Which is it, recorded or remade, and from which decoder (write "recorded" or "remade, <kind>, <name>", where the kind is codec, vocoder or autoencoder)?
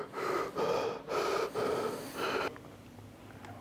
recorded